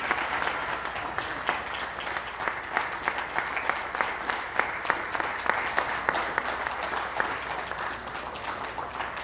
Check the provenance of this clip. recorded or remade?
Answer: recorded